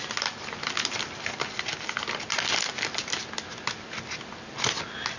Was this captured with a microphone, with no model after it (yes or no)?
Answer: yes